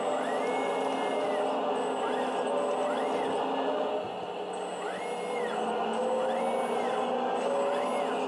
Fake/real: real